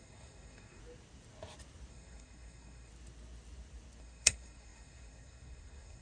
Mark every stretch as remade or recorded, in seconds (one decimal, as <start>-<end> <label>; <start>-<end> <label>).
0.0-0.8 remade; 0.8-1.9 recorded; 1.9-2.9 remade; 2.9-4.0 recorded; 4.0-6.0 remade